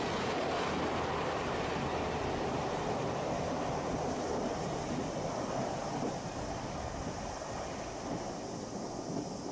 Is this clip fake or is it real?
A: real